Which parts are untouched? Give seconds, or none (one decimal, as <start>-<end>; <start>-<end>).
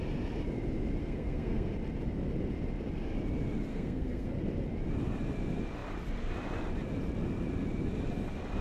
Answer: 0.0-1.0; 1.7-3.7; 4.3-8.6